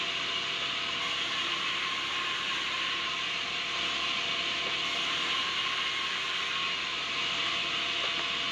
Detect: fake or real real